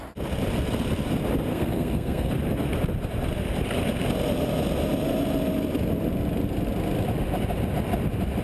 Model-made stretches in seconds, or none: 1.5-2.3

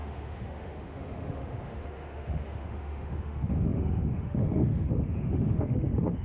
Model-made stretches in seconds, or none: 0.0-6.2

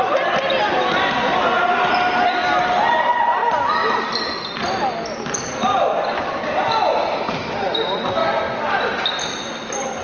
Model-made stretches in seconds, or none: none

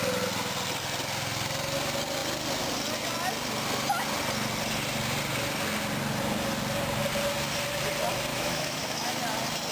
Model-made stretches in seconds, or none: 8.3-9.2

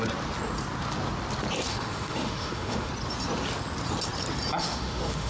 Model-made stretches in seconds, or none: 1.7-2.9; 4.6-5.3